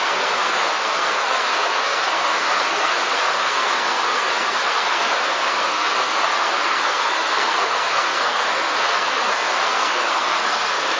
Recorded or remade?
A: remade